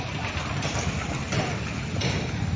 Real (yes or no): no